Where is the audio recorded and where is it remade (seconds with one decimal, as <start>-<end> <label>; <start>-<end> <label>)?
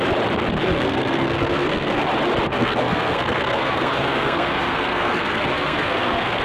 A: 0.0-0.6 recorded; 0.6-2.0 remade; 2.0-2.5 recorded; 2.5-6.4 remade